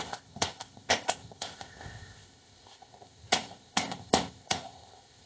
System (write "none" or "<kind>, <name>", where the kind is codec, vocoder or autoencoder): codec, ZipCodec